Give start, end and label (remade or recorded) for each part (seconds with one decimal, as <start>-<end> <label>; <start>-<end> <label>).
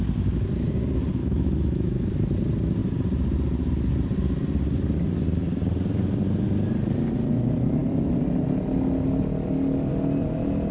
0.0-1.2 recorded; 1.2-2.1 remade; 2.1-10.7 recorded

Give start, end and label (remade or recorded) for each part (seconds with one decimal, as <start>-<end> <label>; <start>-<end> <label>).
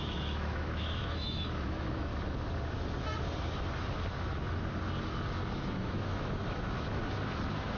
0.0-2.1 remade; 2.1-5.5 recorded; 5.5-7.0 remade; 7.0-7.8 recorded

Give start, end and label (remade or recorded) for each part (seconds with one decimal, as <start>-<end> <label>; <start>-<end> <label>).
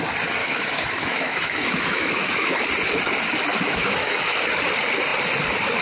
0.0-0.4 recorded; 0.4-2.6 remade; 2.6-3.5 recorded; 3.5-4.5 remade; 4.5-5.8 recorded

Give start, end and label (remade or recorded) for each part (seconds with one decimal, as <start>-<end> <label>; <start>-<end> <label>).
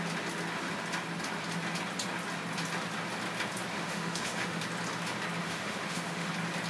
0.0-3.7 recorded; 3.7-4.6 remade; 4.6-5.4 recorded; 5.4-6.3 remade; 6.3-6.7 recorded